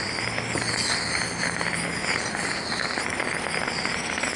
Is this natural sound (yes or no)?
yes